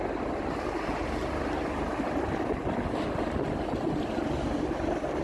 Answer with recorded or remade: recorded